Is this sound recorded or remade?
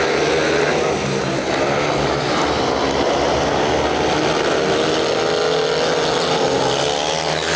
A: recorded